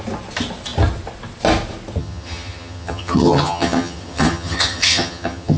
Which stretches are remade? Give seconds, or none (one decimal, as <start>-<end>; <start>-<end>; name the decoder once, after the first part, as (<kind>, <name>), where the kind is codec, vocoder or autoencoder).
2.0-5.6 (vocoder, HiFi-GAN)